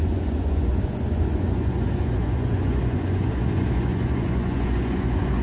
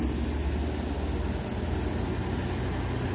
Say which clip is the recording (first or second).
second